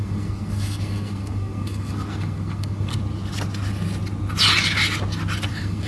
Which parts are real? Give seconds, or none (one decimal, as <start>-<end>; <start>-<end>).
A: 2.9-5.5